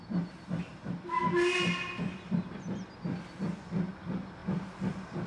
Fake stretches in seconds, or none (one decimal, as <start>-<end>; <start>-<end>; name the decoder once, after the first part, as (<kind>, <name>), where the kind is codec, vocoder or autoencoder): none